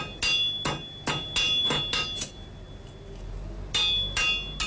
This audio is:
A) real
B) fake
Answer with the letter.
A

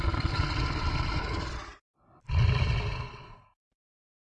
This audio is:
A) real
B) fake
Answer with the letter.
A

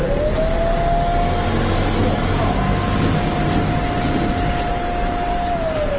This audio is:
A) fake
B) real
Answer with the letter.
B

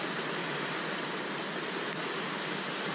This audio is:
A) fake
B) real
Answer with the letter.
B